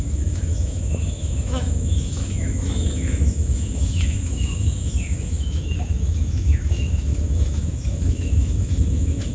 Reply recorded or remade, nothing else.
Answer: remade